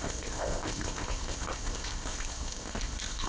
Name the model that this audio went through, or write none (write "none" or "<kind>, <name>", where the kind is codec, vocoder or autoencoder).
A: codec, ZipCodec